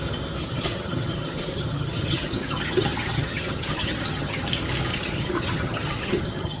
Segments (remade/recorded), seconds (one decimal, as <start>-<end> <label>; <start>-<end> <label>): 0.0-0.4 recorded; 0.4-4.4 remade; 4.4-4.9 recorded; 4.9-6.6 remade